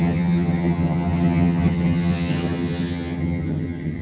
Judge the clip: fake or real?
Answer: fake